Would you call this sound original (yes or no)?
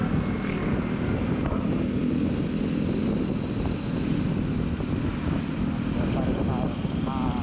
yes